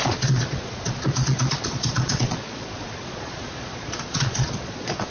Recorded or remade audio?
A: remade